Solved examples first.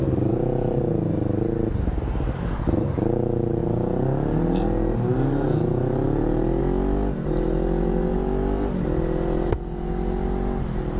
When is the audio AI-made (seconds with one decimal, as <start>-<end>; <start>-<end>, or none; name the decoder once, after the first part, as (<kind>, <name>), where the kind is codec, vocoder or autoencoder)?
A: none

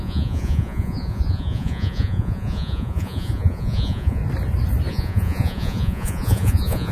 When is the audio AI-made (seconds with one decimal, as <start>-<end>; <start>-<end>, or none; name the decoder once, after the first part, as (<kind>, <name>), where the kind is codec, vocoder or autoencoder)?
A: 0.0-4.2 (vocoder, Vocos); 4.9-6.9

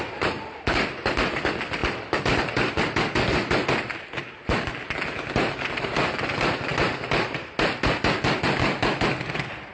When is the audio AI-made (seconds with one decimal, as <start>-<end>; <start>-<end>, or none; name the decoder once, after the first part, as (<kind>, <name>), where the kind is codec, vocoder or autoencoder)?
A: none

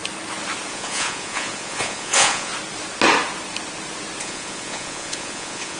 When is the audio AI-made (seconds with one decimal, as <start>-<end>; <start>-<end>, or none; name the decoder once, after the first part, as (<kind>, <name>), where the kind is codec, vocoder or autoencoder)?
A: 0.7-2.5 (vocoder, Vocos); 4.2-5.8

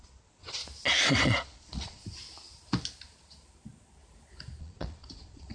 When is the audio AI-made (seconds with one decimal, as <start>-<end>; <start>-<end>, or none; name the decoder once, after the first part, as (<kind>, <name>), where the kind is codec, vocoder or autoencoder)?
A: 0.0-0.6 (vocoder, Vocos); 1.2-2.0; 4.6-5.5

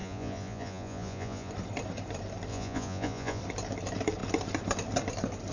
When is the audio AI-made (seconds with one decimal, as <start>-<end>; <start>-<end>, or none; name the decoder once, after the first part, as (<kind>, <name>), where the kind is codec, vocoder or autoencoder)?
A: 0.0-1.5 (vocoder, Vocos); 2.5-3.4

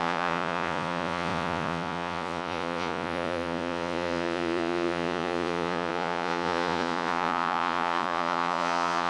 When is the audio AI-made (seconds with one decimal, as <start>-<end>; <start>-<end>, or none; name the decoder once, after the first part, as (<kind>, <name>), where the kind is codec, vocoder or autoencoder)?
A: 0.0-9.1 (vocoder, Vocos)